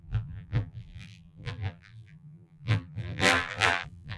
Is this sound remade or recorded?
remade